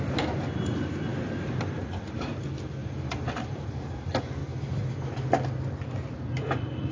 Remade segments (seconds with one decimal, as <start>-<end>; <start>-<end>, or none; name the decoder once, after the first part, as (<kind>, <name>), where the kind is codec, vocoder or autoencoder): 0.0-4.4 (vocoder, BigVGAN v2); 6.1-6.9